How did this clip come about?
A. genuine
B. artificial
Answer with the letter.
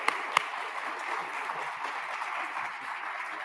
A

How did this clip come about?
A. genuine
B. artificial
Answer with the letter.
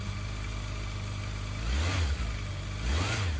A